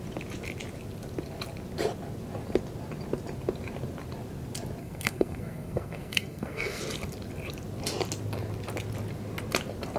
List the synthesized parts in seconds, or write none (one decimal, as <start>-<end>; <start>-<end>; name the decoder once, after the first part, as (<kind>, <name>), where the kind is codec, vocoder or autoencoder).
4.8-6.8 (codec, SNAC)